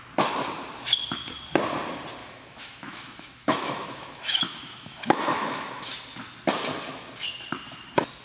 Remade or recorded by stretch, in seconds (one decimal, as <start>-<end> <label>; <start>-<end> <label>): 0.0-2.2 recorded; 2.2-5.9 remade; 5.9-8.2 recorded